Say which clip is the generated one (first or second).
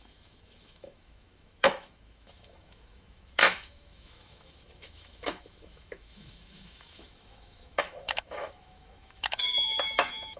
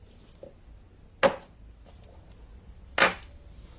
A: first